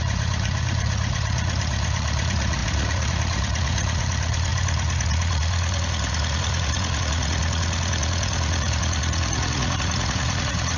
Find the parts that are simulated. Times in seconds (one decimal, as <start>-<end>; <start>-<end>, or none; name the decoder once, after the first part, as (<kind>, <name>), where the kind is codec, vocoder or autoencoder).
0.0-10.8 (vocoder, Vocos)